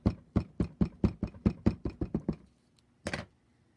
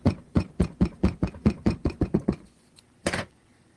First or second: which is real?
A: first